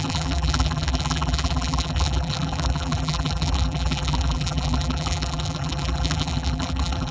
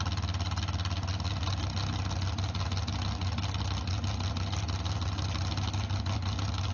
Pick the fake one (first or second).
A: first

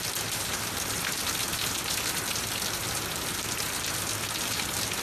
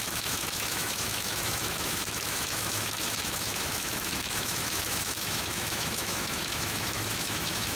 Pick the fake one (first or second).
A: second